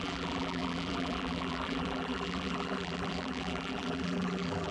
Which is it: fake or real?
fake